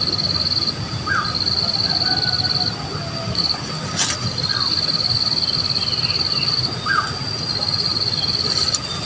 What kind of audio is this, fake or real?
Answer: real